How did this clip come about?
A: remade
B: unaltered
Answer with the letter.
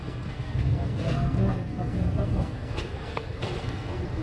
A